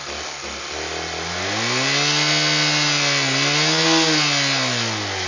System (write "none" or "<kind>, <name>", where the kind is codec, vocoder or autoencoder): none